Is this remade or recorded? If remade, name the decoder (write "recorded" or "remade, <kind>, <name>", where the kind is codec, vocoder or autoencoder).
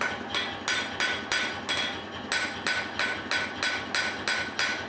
recorded